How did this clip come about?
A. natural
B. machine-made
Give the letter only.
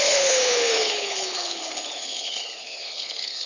B